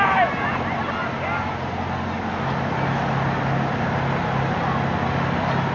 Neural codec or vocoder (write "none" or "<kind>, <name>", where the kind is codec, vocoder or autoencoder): none